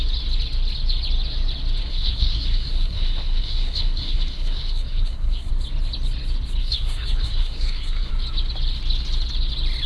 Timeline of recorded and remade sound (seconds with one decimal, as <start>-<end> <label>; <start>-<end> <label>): 0.0-1.8 recorded; 1.8-5.5 remade; 5.5-6.6 recorded; 6.6-8.1 remade; 8.1-9.9 recorded